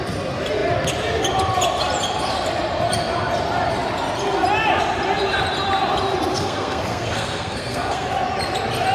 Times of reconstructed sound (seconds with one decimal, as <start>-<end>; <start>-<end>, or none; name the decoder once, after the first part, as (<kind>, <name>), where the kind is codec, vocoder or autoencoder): 6.3-8.1 (codec, SNAC)